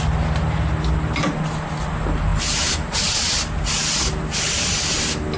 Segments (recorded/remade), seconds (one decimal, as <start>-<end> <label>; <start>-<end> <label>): 0.0-5.4 recorded

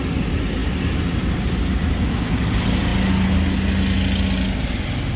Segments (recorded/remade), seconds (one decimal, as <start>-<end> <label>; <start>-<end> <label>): 0.0-5.2 recorded

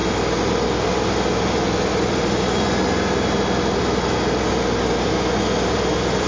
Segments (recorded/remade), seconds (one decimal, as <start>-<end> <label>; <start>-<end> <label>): 0.0-6.3 recorded

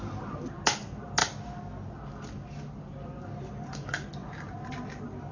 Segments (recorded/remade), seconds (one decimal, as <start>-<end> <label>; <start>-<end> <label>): 0.0-5.3 recorded

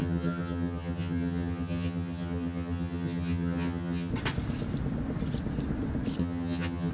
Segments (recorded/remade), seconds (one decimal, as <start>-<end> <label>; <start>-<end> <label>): 0.0-4.1 remade; 4.1-6.2 recorded; 6.2-6.9 remade

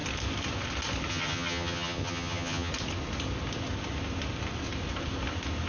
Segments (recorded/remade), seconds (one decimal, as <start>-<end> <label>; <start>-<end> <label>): 0.0-1.1 recorded; 1.1-2.7 remade; 2.7-5.7 recorded

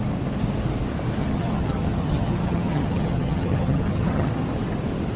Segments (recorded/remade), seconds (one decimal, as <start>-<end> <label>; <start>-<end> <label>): 0.0-1.2 recorded; 1.2-4.3 remade; 4.3-5.2 recorded